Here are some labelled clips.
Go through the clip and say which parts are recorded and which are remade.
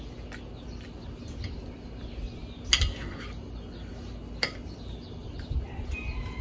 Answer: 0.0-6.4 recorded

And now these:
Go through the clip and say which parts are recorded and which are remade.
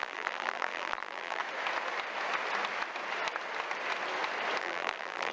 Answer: 0.0-1.4 remade; 1.4-4.6 recorded; 4.6-5.3 remade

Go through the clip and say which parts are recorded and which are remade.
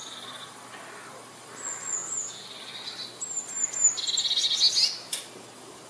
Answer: 0.0-5.9 recorded